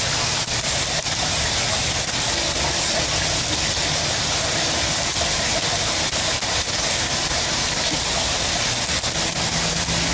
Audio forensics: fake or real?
real